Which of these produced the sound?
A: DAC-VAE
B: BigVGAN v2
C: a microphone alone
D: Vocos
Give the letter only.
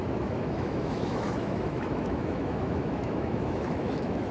A